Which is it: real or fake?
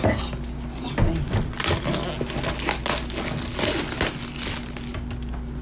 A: real